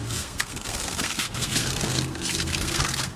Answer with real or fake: fake